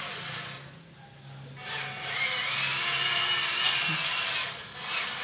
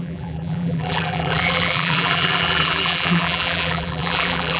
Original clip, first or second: first